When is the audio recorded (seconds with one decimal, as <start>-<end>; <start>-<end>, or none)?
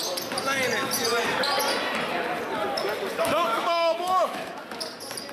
0.0-3.2; 4.5-5.3